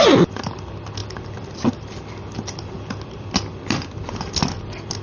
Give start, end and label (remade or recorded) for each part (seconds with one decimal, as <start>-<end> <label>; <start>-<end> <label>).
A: 0.0-1.0 recorded; 1.0-4.0 remade; 4.0-5.0 recorded